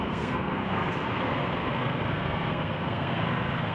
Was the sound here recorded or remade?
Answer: remade